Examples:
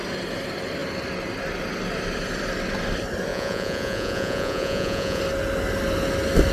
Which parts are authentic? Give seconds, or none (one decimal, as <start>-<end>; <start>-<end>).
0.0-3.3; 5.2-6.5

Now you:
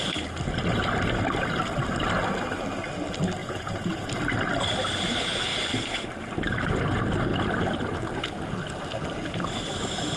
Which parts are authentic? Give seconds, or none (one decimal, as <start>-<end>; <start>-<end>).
0.0-3.4; 4.1-10.2

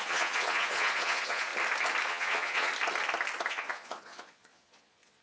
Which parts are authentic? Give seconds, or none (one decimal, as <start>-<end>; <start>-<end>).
1.5-2.1; 2.7-3.5